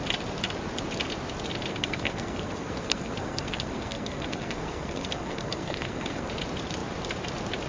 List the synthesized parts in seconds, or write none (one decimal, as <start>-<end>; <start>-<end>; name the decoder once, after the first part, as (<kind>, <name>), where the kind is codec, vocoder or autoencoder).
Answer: 1.7-6.3 (codec, SNAC)

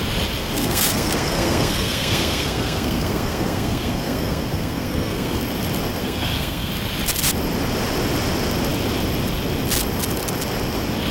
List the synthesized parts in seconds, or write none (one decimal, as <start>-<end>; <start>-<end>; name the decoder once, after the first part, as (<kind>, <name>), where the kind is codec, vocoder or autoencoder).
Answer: 0.4-5.4 (codec, SNAC); 6.0-6.7

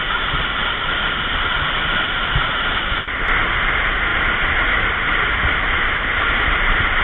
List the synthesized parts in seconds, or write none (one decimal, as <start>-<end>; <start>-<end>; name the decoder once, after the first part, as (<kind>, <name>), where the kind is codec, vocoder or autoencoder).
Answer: 0.0-7.0 (vocoder, BigVGAN v2)